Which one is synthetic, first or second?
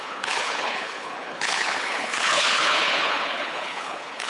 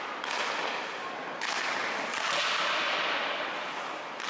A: first